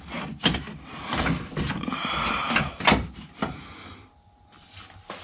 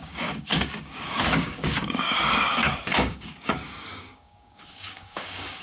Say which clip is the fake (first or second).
second